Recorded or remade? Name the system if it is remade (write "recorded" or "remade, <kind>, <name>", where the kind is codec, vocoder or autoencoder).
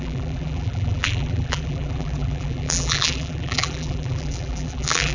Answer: remade, vocoder, BigVGAN v2